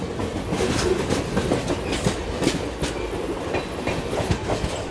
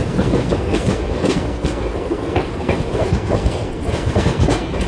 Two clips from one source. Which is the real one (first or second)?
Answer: first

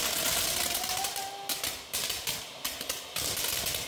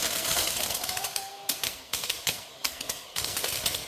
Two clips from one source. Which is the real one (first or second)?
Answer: first